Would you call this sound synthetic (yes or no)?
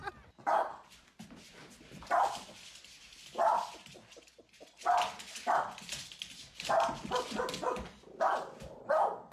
no